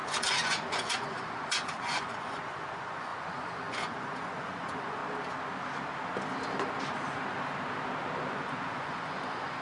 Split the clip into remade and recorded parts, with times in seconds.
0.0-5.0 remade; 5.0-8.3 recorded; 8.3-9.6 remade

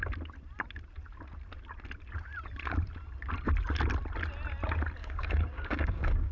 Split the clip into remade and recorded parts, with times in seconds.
0.0-5.0 recorded; 5.0-6.3 remade

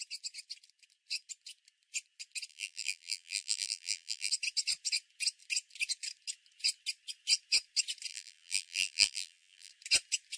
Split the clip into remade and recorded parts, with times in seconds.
0.0-2.5 recorded; 2.5-4.3 remade; 4.3-8.1 recorded; 8.1-9.7 remade; 9.7-10.4 recorded

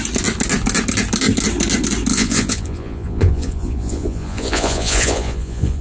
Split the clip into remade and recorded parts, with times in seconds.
0.0-2.1 recorded; 2.1-5.8 remade

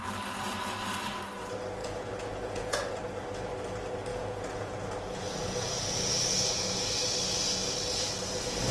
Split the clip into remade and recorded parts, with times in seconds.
0.0-1.8 recorded; 1.8-3.0 remade; 3.0-4.1 recorded; 4.1-6.9 remade; 6.9-8.7 recorded

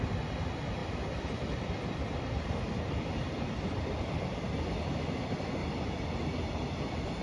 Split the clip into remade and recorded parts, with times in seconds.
0.0-0.8 recorded; 0.8-4.7 remade; 4.7-5.6 recorded; 5.6-7.2 remade

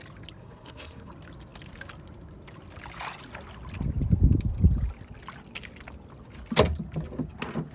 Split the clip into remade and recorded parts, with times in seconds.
0.0-0.4 recorded; 0.4-1.1 remade; 1.1-7.7 recorded

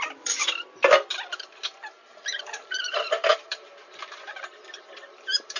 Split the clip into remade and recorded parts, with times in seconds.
0.0-0.4 remade; 0.4-1.8 recorded; 1.8-5.6 remade